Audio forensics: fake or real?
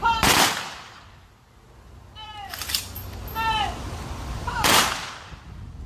real